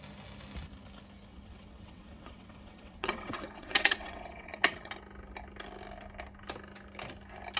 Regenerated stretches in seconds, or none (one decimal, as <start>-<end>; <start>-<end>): 1.3-4.9